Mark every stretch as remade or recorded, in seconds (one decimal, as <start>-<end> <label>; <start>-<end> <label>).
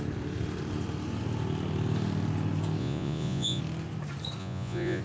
0.0-2.8 recorded; 2.8-3.6 remade; 3.6-4.4 recorded; 4.4-5.0 remade